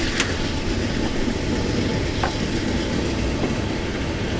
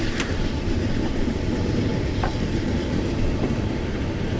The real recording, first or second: first